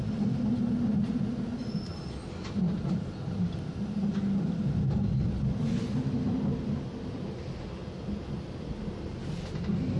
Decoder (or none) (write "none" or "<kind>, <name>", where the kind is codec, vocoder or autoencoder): none